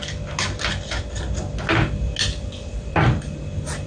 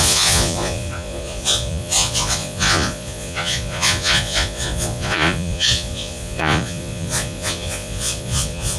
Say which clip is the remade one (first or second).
second